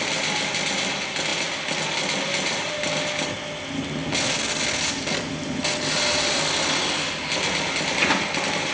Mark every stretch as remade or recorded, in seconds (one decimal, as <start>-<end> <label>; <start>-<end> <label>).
0.0-8.7 recorded